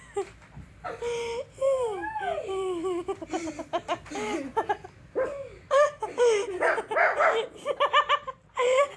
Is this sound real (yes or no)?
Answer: no